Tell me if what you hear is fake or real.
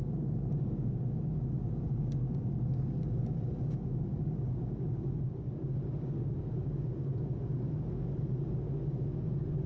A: fake